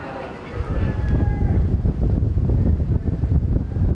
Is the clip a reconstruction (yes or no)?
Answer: yes